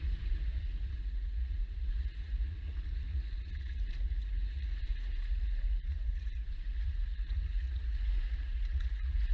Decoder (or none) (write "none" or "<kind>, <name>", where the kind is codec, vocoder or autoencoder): vocoder, Vocos